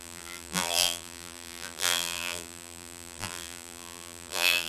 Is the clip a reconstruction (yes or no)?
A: yes